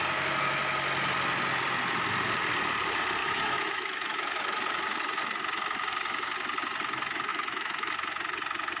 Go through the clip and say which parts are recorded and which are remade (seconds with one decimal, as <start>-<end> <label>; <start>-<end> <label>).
0.0-3.2 recorded; 3.2-4.6 remade; 4.6-7.3 recorded; 7.3-7.9 remade; 7.9-8.8 recorded

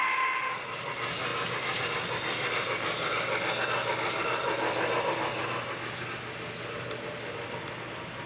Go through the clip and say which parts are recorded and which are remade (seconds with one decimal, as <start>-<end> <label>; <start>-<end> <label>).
0.0-0.5 remade; 0.5-8.3 recorded

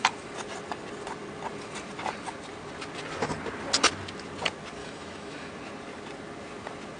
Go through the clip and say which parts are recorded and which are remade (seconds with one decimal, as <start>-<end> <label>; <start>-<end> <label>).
0.0-4.8 recorded; 4.8-5.5 remade; 5.5-7.0 recorded

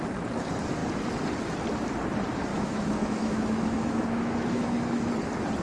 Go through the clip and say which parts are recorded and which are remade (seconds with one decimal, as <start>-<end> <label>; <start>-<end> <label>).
0.0-2.5 recorded; 2.5-5.1 remade; 5.1-5.6 recorded

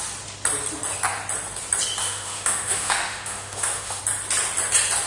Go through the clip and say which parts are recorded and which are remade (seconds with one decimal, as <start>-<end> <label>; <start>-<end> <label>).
0.0-2.0 recorded; 2.0-4.0 remade; 4.0-5.1 recorded

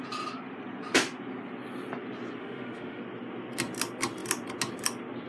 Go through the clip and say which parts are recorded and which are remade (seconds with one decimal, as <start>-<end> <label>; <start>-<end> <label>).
0.0-2.4 recorded; 2.4-3.0 remade; 3.0-5.3 recorded

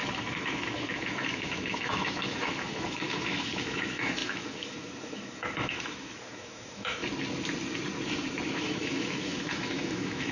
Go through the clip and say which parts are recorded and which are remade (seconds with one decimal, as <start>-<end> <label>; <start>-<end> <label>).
0.0-7.0 remade; 7.0-8.4 recorded; 8.4-10.3 remade

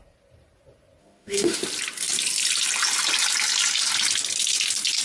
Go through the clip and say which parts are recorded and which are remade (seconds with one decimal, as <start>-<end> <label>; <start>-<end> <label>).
0.0-1.0 recorded; 1.0-1.6 remade; 1.6-5.0 recorded